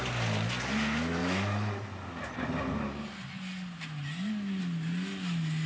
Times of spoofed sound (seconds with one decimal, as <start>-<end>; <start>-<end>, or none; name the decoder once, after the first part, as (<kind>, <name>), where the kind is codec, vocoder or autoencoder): none